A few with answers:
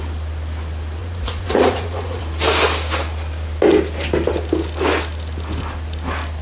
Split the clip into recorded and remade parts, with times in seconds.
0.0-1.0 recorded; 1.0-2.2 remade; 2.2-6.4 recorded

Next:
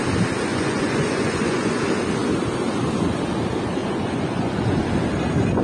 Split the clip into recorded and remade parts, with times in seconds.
0.0-0.5 recorded; 0.5-1.8 remade; 1.8-3.8 recorded; 3.8-4.8 remade; 4.8-5.6 recorded